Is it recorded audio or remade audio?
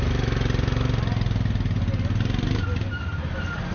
recorded